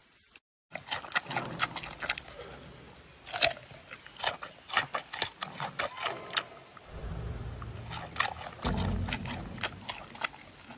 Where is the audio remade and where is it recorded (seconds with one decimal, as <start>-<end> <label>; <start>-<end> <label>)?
0.0-10.8 recorded